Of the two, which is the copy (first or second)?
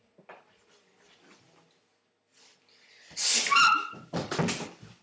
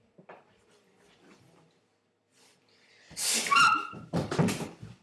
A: second